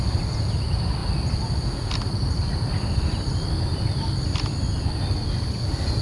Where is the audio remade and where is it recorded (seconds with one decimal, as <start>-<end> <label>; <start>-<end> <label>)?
0.0-6.0 recorded